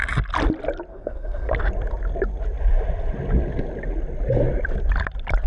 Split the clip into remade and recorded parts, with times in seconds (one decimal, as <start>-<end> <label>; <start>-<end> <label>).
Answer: 0.0-0.9 recorded; 0.9-1.5 remade; 1.5-5.5 recorded